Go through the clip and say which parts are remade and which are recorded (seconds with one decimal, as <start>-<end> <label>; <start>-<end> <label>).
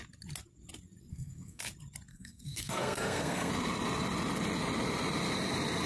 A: 0.0-1.1 recorded; 1.1-1.6 remade; 1.6-2.1 recorded; 2.1-3.5 remade; 3.5-5.9 recorded